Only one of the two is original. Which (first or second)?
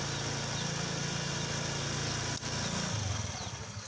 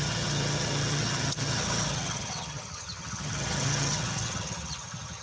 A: first